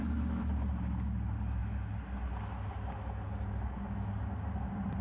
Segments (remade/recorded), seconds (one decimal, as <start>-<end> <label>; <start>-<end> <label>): 0.0-5.0 recorded